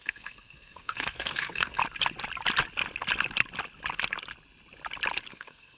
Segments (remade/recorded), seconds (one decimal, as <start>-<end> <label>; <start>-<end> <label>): 0.0-1.8 remade; 1.8-5.3 recorded; 5.3-5.8 remade